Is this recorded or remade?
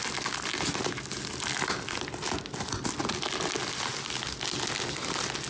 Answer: recorded